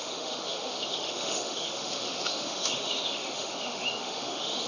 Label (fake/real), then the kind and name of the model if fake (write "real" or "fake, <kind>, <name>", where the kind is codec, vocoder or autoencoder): fake, autoencoder, DAC-VAE